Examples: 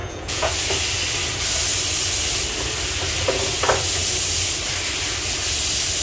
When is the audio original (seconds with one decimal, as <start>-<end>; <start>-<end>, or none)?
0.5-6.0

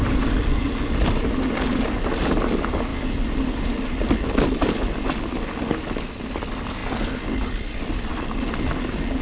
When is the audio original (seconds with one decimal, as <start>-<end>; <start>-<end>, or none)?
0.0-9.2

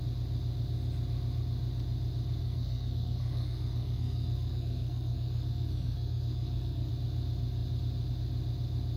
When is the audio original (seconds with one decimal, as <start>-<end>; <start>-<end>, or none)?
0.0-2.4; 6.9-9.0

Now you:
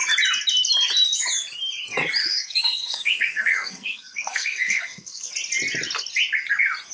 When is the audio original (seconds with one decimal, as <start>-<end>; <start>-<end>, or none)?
0.0-2.2; 5.3-6.9

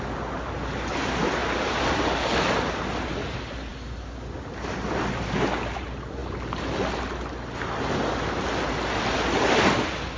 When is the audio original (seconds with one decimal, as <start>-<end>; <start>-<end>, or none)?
0.0-10.2